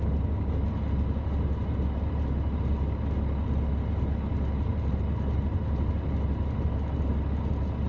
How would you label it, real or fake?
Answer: real